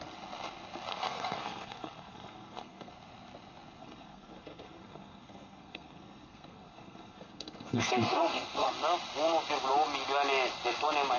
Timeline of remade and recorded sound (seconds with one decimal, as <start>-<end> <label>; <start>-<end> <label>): 0.0-0.9 recorded; 0.9-2.9 remade; 2.9-3.8 recorded; 3.8-8.7 remade; 8.7-11.2 recorded